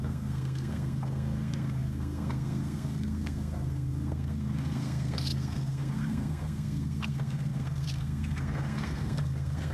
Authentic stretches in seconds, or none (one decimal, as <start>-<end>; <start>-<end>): none